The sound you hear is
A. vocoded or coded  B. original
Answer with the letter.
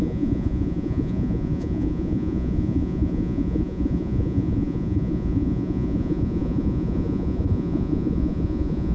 A